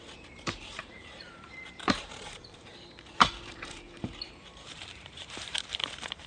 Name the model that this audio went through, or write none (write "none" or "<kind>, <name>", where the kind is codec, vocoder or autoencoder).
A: vocoder, BigVGAN v2